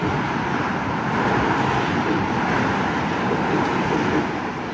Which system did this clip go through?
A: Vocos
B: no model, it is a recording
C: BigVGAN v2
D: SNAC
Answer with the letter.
B